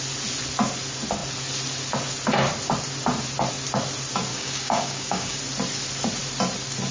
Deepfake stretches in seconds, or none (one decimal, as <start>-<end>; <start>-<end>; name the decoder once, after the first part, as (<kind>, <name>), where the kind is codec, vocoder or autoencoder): 4.3-5.4 (codec, DAC)